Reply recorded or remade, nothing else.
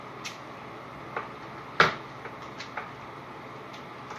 recorded